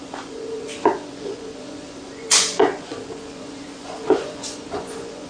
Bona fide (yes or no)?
no